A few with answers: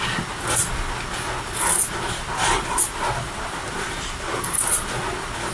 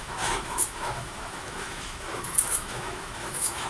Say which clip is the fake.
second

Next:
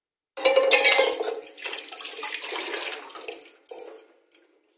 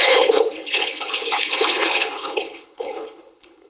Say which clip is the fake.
second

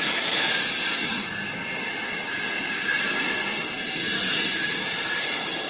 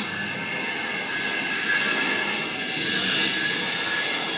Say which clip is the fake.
first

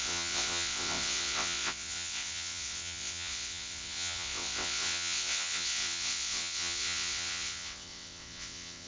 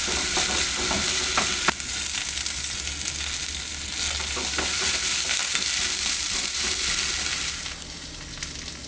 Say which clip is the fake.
first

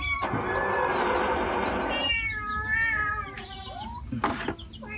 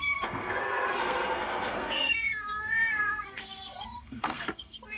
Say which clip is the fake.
second